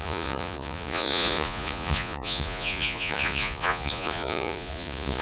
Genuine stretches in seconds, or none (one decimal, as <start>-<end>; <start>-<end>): none